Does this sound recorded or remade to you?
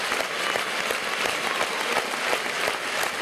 recorded